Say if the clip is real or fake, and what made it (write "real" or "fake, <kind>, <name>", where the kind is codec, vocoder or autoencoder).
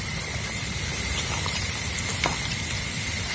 fake, vocoder, BigVGAN v2